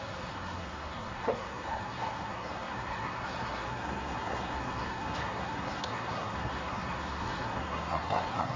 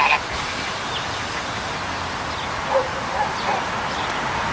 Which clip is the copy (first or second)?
first